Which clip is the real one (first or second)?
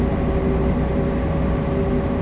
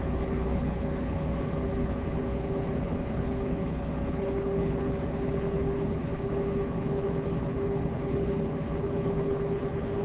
first